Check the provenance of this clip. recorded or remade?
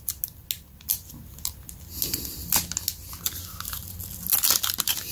recorded